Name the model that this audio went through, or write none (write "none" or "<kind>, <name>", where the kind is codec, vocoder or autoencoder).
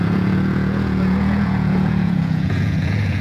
vocoder, Vocos